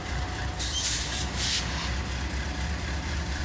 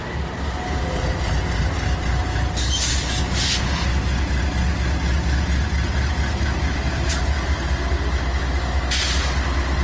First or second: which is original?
second